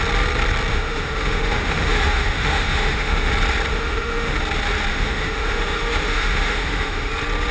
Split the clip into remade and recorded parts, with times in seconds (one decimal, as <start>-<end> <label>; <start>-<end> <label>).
0.0-0.7 recorded; 0.7-3.3 remade; 3.3-3.7 recorded; 3.7-4.4 remade; 4.4-4.9 recorded; 4.9-7.1 remade; 7.1-7.5 recorded